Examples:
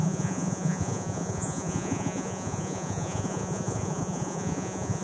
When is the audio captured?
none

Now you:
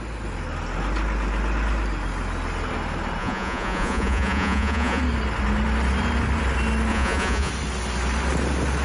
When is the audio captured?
0.0-3.2; 5.0-6.9; 7.5-8.8

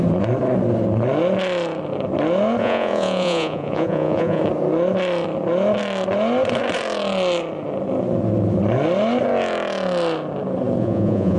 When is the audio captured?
0.0-2.6; 4.4-10.8

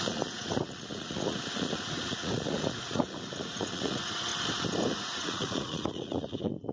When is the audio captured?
4.3-4.9

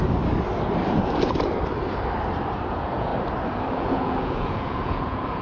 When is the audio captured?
0.0-2.7; 3.1-3.7

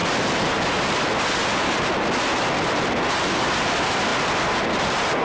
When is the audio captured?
0.0-5.2

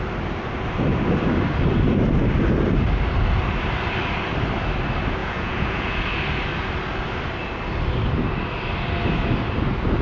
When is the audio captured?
0.0-5.2; 6.1-10.0

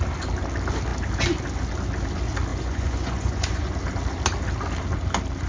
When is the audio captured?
0.0-2.5; 3.7-5.5